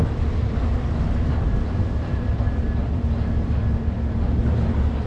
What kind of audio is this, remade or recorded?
recorded